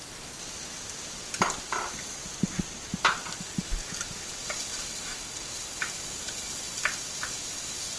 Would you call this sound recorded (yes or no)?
yes